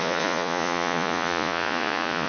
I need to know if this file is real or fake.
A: fake